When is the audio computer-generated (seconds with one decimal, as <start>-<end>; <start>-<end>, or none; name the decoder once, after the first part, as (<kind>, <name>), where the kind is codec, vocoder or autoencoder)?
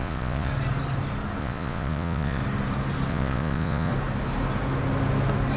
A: 0.0-0.5 (vocoder, Vocos); 1.4-2.4; 3.1-3.9